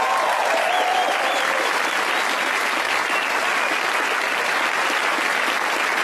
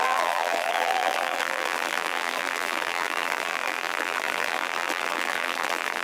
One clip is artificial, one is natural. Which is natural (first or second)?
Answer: first